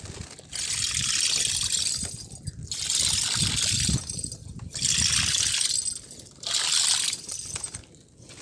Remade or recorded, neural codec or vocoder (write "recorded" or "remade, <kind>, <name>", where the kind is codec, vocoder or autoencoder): recorded